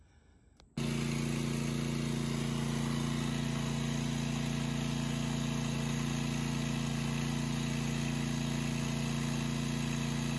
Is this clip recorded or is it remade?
recorded